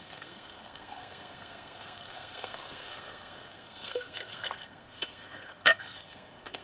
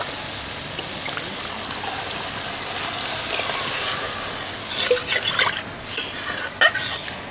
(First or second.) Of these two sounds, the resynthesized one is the first